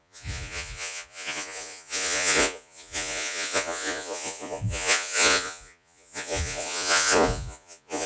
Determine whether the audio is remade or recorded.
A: remade